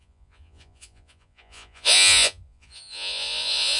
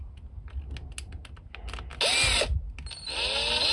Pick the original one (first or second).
second